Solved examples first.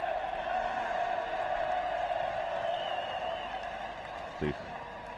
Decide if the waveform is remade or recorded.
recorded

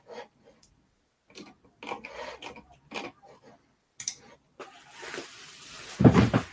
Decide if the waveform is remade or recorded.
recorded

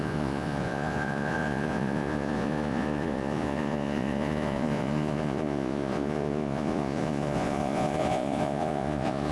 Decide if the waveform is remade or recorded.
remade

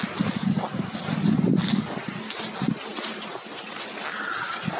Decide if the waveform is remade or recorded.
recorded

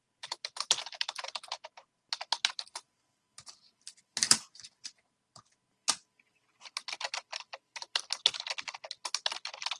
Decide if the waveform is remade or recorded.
recorded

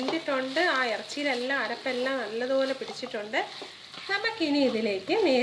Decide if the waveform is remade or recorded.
recorded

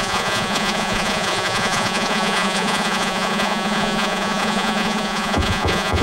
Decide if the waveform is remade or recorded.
remade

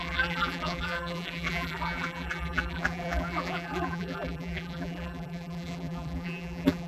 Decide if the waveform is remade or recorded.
remade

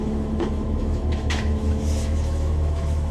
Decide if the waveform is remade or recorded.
remade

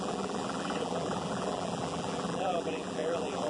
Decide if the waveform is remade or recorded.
remade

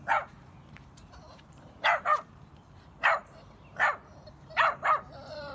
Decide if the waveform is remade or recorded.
remade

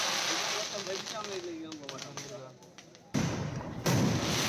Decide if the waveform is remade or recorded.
recorded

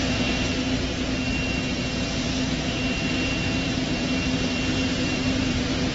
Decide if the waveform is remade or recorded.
recorded